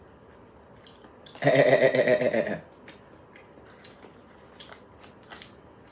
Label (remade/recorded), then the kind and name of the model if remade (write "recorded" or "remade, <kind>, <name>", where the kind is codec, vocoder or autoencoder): recorded